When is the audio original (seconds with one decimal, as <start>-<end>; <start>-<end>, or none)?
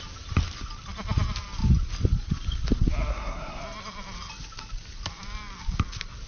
0.0-3.1; 3.6-6.3